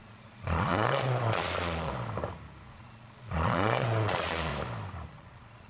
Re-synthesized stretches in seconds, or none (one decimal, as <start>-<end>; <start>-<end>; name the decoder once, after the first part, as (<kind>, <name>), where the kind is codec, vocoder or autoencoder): 0.0-1.9 (vocoder, Vocos); 2.7-4.5; 5.1-5.7

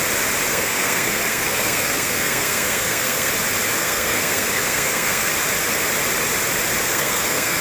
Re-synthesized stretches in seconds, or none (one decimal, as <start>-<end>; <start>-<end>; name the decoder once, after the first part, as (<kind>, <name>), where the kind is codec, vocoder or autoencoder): 0.5-3.3 (codec, SNAC); 3.8-5.3; 6.8-7.6